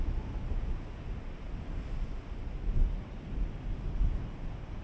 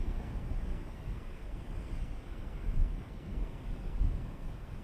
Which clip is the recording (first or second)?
first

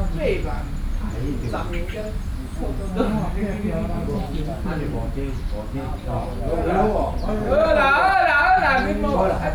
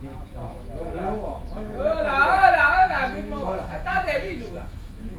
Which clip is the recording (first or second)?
first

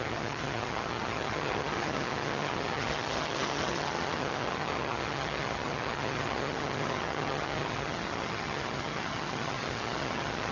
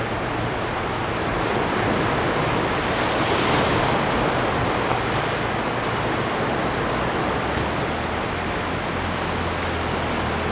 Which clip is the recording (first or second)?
second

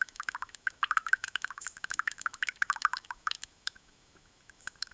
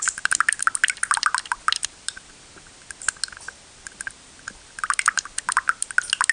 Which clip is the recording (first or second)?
second